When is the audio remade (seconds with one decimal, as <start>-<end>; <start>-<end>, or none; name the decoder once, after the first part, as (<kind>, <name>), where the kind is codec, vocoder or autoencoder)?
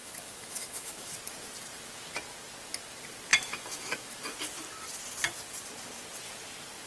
0.0-1.1 (autoencoder, DAC-VAE); 3.3-4.2